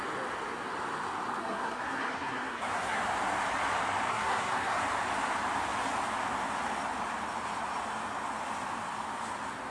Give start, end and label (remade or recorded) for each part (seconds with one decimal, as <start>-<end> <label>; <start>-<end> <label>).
0.0-1.4 recorded; 1.4-3.0 remade; 3.0-4.1 recorded; 4.1-4.8 remade; 4.8-9.7 recorded